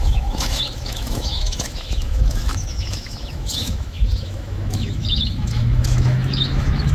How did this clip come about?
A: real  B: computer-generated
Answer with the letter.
B